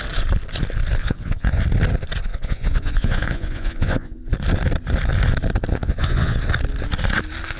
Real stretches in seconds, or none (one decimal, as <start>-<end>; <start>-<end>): 0.0-1.0; 1.6-2.3; 4.2-5.7; 6.4-7.6